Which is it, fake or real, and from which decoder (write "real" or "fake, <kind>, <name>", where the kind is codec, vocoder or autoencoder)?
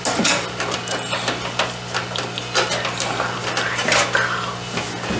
real